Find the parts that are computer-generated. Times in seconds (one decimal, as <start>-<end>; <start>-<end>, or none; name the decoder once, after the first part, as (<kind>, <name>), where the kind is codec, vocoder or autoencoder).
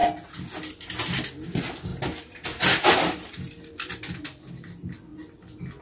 none